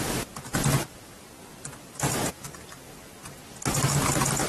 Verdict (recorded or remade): recorded